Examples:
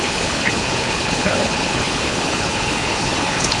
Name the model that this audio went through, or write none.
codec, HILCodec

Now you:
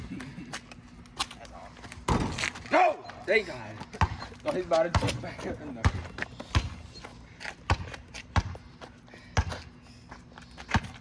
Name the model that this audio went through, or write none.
none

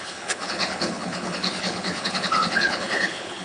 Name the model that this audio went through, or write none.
codec, HILCodec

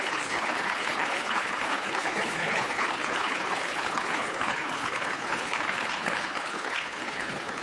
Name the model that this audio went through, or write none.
codec, HILCodec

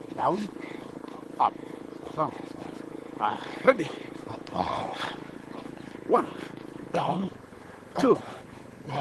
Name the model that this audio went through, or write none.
codec, HILCodec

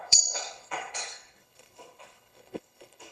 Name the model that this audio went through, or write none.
codec, HILCodec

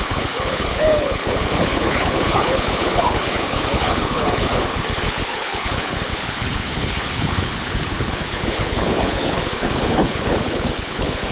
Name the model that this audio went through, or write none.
codec, HILCodec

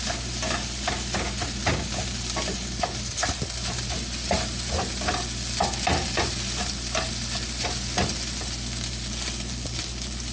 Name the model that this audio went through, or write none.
none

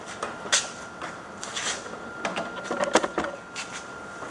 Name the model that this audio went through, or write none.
none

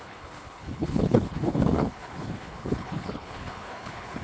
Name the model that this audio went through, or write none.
codec, HILCodec